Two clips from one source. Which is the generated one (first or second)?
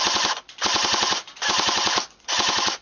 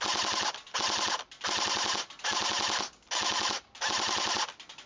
first